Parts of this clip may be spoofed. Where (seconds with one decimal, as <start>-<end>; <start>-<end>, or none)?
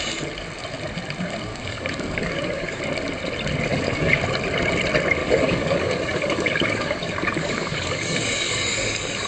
1.5-2.8; 3.7-4.2; 5.2-9.3